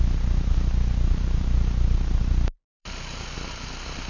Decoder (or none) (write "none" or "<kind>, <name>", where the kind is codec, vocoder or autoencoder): vocoder, BigVGAN v2